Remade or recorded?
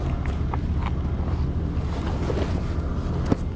recorded